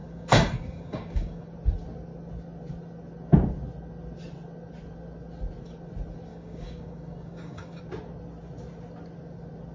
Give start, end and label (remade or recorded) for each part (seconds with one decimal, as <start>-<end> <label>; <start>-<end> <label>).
0.0-1.5 remade; 1.5-6.3 recorded; 6.3-7.8 remade; 7.8-9.7 recorded